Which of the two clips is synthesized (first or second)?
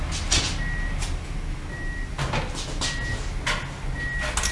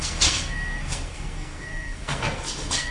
second